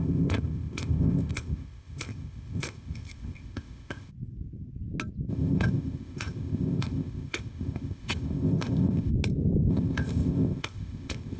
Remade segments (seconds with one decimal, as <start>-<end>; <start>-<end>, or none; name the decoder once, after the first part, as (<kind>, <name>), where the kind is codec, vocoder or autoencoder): 0.0-4.1 (codec, ZipCodec); 5.3-9.1; 9.7-11.4